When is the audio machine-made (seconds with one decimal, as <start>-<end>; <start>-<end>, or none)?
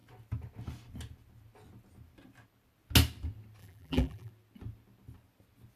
3.6-4.3